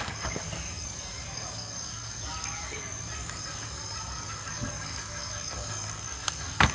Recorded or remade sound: remade